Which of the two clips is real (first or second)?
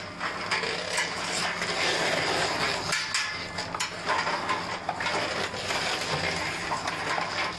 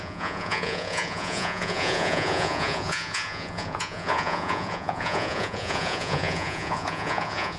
first